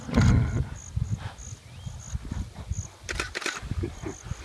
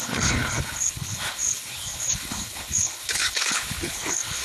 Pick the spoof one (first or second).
second